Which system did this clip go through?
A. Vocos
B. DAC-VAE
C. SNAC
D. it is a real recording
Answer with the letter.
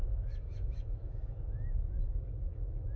B